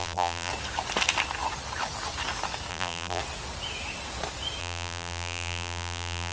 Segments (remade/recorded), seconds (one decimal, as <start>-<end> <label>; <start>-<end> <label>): 0.0-0.5 remade; 0.5-2.7 recorded; 2.7-3.2 remade; 3.2-4.6 recorded; 4.6-6.3 remade

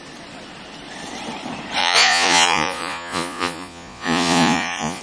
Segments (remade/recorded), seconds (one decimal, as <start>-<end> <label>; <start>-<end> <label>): 0.0-1.8 recorded; 1.8-5.0 remade

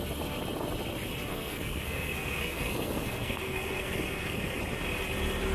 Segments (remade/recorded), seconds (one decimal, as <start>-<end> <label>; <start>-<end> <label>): 0.0-1.3 recorded; 1.3-4.6 remade; 4.6-5.5 recorded